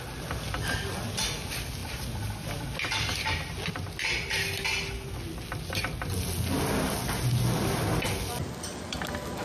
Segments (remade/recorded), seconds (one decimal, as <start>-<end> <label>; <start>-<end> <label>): 0.0-9.4 recorded

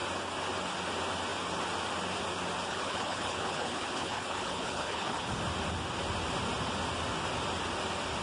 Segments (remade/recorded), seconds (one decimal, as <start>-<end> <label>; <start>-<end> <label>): 0.0-2.7 recorded; 2.7-5.4 remade; 5.4-8.2 recorded

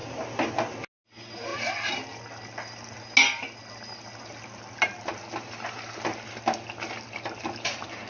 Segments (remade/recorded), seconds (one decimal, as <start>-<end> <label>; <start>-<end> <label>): 0.0-8.1 recorded

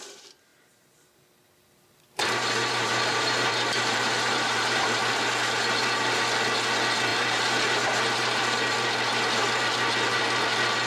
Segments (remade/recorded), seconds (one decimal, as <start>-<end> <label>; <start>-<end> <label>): 0.0-0.5 recorded; 0.5-5.0 remade; 5.0-7.1 recorded; 7.1-8.4 remade; 8.4-10.9 recorded

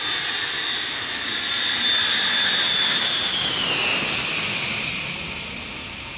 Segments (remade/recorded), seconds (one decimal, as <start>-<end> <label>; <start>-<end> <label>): 0.0-6.2 recorded

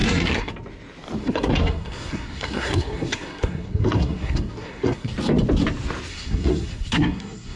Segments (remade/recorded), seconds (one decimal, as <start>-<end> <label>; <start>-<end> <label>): 0.0-0.5 remade; 0.5-1.2 recorded; 1.2-5.1 remade; 5.1-6.1 recorded; 6.1-7.6 remade

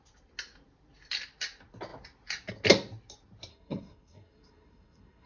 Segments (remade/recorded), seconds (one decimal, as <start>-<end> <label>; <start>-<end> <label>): 0.0-3.5 recorded; 3.5-5.3 remade

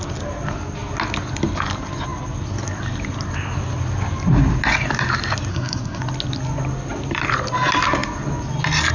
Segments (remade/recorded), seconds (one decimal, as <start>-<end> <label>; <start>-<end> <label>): 0.0-5.5 recorded; 5.5-6.0 remade; 6.0-8.9 recorded